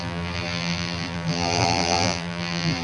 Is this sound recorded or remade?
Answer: remade